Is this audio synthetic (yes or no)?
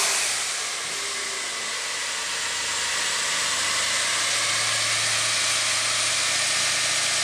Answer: no